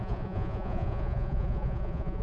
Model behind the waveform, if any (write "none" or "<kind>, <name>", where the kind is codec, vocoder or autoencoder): vocoder, Vocos